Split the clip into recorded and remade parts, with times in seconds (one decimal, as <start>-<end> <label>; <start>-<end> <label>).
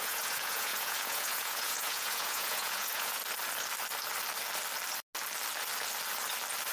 0.0-3.2 remade; 3.2-6.7 recorded